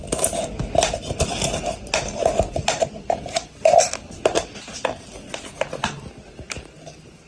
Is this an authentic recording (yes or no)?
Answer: yes